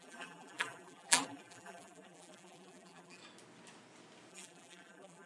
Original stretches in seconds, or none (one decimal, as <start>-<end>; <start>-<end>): 3.2-4.3